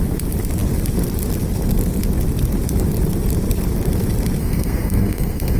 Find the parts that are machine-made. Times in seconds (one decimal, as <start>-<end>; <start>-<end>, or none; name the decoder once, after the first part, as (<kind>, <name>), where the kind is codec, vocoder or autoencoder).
4.4-5.6 (codec, SNAC)